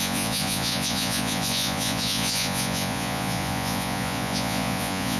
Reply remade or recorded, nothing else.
remade